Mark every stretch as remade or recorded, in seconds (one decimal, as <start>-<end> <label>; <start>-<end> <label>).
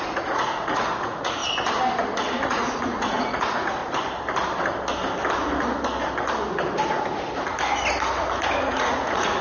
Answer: 0.0-1.4 remade; 1.4-2.4 recorded; 2.4-3.8 remade; 3.8-8.6 recorded; 8.6-9.4 remade